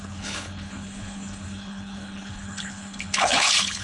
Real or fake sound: fake